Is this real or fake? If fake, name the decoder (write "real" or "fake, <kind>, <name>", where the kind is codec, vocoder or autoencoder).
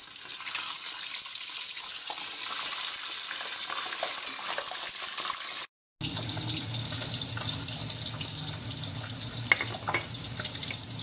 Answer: real